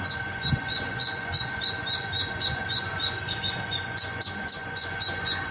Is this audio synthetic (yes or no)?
yes